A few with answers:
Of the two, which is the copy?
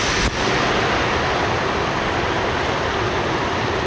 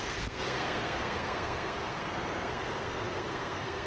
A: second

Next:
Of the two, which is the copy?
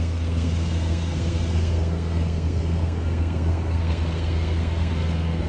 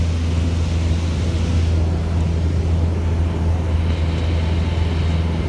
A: first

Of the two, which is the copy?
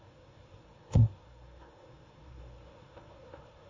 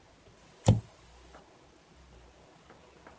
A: first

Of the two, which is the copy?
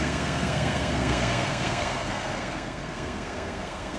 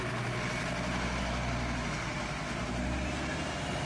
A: first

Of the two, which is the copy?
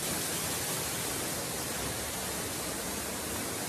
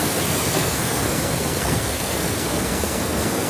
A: second